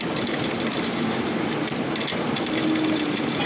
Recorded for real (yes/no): yes